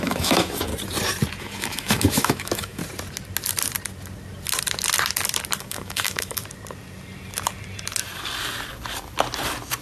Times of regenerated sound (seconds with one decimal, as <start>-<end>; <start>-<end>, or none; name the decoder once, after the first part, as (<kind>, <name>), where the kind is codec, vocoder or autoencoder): 0.0-0.7 (autoencoder, DAC-VAE); 1.4-2.8; 5.6-6.4